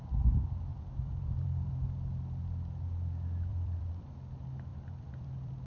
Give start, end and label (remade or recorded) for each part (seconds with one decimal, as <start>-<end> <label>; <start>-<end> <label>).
0.0-0.7 recorded; 0.7-1.7 remade; 1.7-3.5 recorded; 3.5-4.1 remade; 4.1-4.7 recorded; 4.7-5.7 remade